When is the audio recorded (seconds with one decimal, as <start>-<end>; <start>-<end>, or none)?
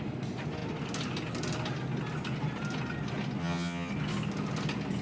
0.0-3.4; 3.9-5.0